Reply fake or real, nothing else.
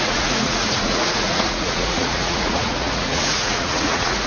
fake